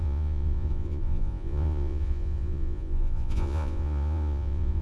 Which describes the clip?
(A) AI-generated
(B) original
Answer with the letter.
A